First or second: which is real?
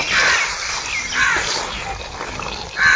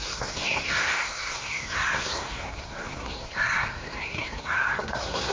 first